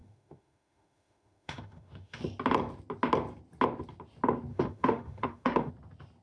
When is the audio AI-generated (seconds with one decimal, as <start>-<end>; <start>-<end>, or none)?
0.0-2.2; 4.5-5.7